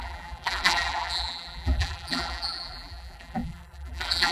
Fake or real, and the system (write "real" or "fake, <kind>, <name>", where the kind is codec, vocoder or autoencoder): fake, vocoder, BigVGAN v2